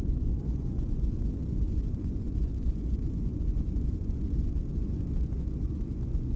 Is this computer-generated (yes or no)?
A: yes